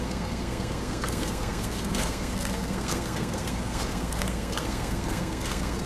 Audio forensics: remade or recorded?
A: remade